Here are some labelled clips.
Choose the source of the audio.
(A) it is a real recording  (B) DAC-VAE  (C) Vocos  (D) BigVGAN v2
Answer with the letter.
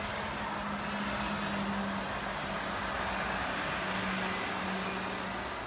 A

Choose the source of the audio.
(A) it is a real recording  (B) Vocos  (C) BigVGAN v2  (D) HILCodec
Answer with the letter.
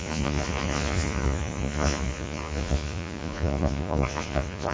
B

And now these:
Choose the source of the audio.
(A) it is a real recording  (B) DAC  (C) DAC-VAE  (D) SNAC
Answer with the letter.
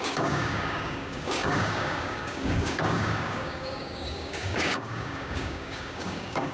B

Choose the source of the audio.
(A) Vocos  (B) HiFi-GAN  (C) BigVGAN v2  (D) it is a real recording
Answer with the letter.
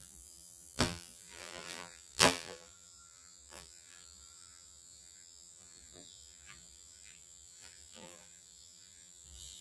C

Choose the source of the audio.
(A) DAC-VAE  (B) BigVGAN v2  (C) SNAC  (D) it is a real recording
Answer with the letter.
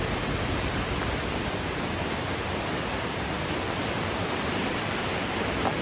B